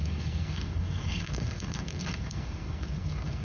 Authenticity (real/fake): fake